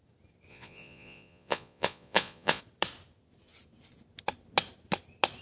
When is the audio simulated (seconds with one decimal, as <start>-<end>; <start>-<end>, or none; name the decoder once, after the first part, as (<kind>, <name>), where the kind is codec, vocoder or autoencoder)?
0.5-2.6 (vocoder, Vocos)